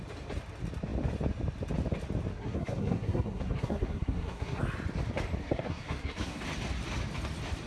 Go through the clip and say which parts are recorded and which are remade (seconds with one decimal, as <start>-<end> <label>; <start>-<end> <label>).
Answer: 0.0-2.3 recorded; 2.3-4.6 remade; 4.6-5.4 recorded; 5.4-6.4 remade; 6.4-7.7 recorded